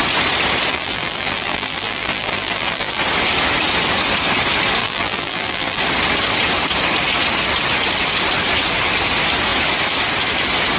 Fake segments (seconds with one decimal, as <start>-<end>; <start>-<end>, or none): 0.7-3.0; 4.8-5.8